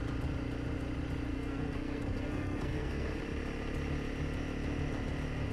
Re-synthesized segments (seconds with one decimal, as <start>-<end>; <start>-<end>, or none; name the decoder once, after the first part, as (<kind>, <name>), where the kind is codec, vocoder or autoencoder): 1.3-3.2 (codec, SNAC)